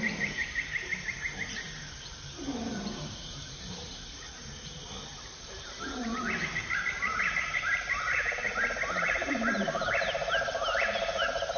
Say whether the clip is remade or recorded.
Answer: remade